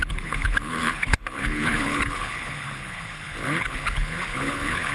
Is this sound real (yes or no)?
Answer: no